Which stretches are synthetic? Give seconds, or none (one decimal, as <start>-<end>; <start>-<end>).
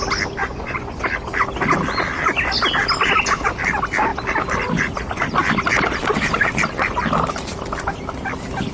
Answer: 0.4-1.0